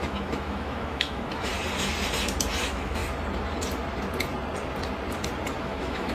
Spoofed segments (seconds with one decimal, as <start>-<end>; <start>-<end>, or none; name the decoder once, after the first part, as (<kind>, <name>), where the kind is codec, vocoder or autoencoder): 0.0-1.5 (autoencoder, DAC-VAE); 2.6-3.0; 5.6-6.1